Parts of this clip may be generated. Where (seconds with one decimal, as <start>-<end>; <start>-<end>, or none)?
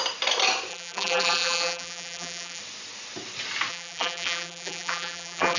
0.7-2.6; 3.7-5.6